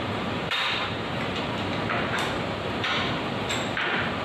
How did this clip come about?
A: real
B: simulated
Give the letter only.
B